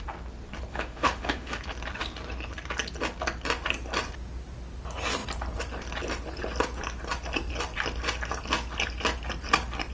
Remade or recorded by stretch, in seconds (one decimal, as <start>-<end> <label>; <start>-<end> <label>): 0.0-0.7 recorded; 0.7-1.6 remade; 1.6-9.9 recorded